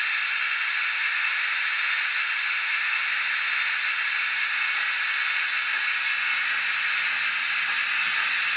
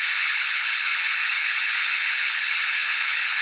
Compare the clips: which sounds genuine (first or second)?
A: first